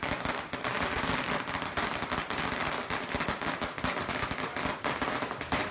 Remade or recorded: recorded